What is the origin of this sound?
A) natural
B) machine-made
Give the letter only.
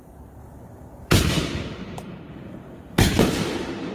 B